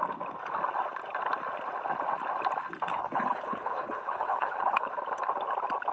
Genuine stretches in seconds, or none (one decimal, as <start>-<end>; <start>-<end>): 0.0-2.9; 4.9-5.9